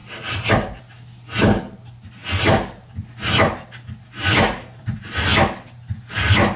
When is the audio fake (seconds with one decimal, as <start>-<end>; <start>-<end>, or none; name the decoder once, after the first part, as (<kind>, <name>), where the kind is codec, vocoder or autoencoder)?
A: none